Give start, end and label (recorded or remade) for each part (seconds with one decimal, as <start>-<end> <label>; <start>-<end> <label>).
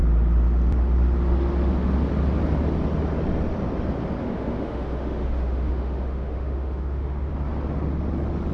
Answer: 0.0-4.2 recorded; 4.2-7.3 remade; 7.3-8.5 recorded